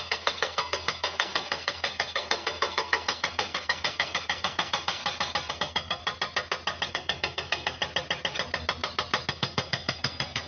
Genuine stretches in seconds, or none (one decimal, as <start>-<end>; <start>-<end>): 5.0-5.5; 6.0-6.9; 7.8-9.3